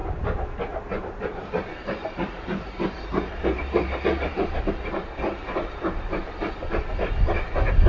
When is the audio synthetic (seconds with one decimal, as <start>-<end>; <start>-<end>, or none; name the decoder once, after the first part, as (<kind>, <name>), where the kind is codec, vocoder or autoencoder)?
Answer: 0.0-4.7 (vocoder, BigVGAN v2); 5.3-6.2